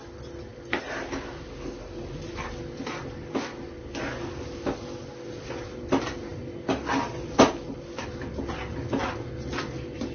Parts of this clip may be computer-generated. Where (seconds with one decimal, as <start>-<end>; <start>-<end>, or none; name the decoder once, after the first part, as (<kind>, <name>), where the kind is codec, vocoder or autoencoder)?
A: none